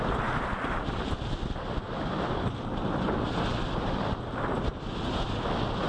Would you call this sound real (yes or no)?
yes